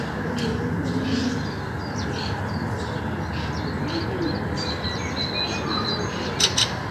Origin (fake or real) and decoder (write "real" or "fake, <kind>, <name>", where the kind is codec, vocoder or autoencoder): real